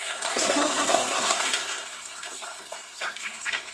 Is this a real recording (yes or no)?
no